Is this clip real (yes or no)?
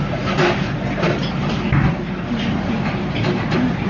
yes